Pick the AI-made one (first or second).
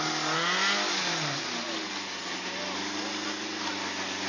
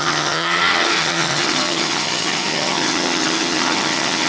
second